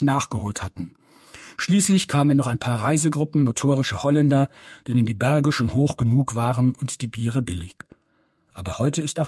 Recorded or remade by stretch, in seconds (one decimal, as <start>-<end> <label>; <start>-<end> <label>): 0.0-9.3 remade